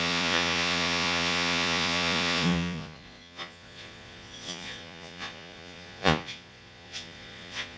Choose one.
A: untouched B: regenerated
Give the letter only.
B